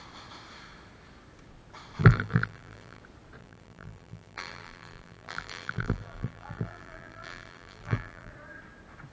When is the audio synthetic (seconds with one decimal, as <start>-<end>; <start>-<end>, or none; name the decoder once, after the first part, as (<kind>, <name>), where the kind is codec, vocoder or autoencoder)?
2.0-3.0 (vocoder, BigVGAN v2); 3.4-8.3